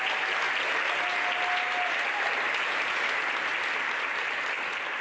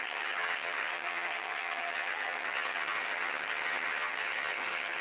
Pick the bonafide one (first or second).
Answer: first